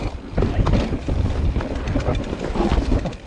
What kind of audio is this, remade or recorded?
recorded